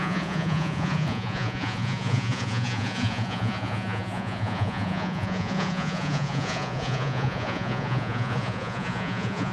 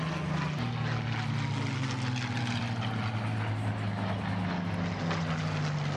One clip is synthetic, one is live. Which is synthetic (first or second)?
first